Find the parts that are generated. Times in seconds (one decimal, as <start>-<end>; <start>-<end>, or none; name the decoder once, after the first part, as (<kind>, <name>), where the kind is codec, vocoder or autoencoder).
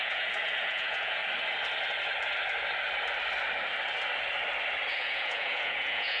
0.0-1.2 (vocoder, Vocos); 4.9-6.2